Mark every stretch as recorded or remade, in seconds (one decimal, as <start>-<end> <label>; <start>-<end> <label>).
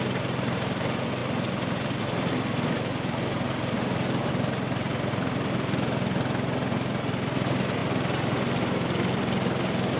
0.0-10.0 recorded